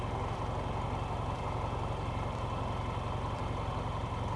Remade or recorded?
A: recorded